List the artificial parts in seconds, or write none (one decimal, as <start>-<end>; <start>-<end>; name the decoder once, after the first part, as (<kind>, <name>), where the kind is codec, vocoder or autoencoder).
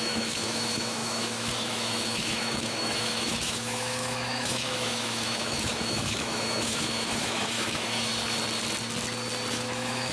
0.0-8.1 (autoencoder, DAC-VAE); 9.5-10.1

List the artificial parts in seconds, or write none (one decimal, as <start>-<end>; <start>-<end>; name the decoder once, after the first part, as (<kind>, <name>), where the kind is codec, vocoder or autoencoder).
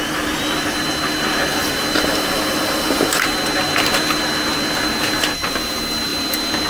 none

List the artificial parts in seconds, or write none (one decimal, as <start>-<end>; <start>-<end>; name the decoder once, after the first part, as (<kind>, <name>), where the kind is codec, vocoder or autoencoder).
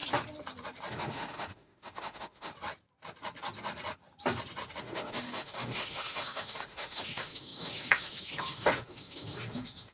0.9-2.5 (autoencoder, DAC-VAE); 4.8-9.9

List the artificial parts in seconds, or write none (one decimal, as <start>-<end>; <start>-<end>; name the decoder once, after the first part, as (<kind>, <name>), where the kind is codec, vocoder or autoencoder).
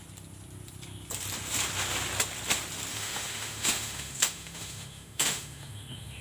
2.9-6.2 (autoencoder, DAC-VAE)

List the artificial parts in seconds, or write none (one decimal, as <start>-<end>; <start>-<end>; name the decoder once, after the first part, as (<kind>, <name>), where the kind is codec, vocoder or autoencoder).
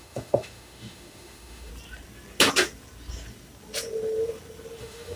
0.0-1.7 (autoencoder, DAC-VAE); 4.8-5.2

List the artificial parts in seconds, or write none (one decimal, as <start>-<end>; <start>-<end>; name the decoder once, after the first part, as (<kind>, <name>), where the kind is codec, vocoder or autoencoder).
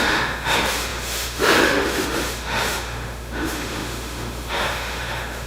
0.0-5.5 (autoencoder, DAC-VAE)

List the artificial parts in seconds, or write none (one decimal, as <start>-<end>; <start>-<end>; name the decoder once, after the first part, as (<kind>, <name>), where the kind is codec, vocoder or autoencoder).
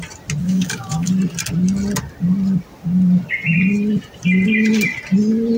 0.4-1.1 (autoencoder, DAC-VAE)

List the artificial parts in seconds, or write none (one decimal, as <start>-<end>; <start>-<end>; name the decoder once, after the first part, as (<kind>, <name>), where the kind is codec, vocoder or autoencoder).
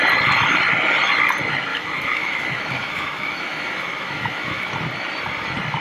1.7-4.7 (autoencoder, DAC-VAE)